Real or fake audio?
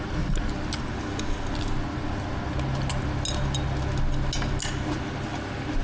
real